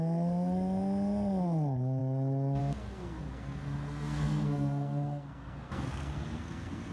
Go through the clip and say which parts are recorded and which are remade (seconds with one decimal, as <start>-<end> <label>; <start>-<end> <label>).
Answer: 0.0-6.9 remade